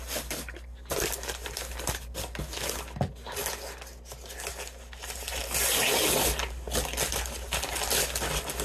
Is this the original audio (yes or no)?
yes